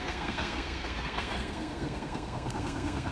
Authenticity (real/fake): fake